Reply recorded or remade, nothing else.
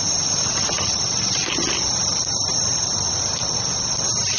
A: recorded